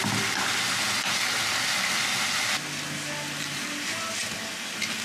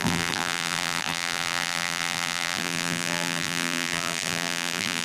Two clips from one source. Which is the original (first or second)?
first